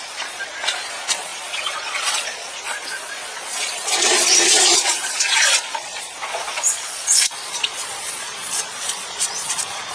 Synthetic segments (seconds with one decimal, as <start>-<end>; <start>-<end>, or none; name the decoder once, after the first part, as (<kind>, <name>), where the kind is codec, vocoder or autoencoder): 0.0-9.9 (vocoder, Vocos)